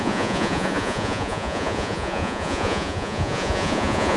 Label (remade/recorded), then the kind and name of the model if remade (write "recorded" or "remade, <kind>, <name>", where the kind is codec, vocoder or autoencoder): remade, vocoder, Vocos